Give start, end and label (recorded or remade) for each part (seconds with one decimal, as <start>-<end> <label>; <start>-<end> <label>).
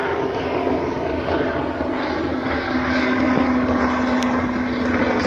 0.0-1.6 remade; 1.6-2.3 recorded; 2.3-3.8 remade; 3.8-5.3 recorded